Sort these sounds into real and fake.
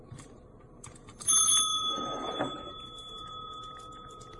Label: fake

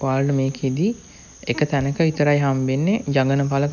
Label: real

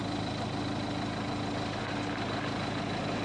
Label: real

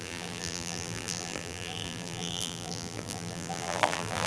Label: fake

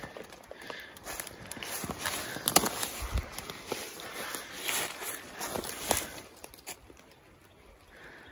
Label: real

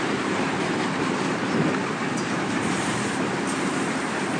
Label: fake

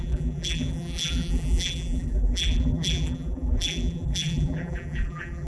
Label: fake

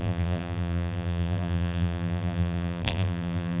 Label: fake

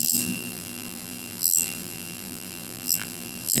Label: fake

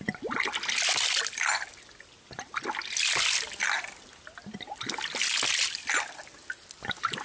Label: real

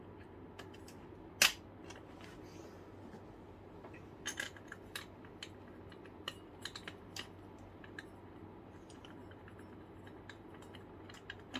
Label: real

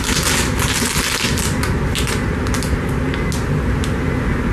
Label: real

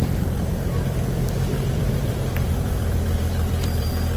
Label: fake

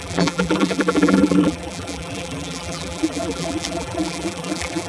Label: fake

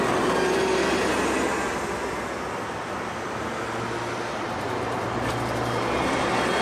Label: real